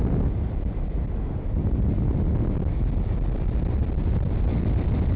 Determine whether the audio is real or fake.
real